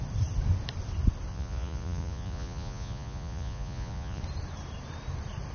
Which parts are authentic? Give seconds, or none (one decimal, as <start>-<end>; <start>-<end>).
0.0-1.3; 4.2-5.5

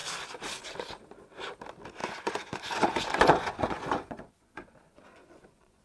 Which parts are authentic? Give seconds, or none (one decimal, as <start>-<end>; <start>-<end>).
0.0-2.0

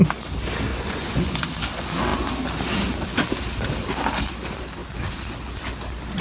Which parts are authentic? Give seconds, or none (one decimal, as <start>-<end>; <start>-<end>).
0.0-0.7; 1.5-6.2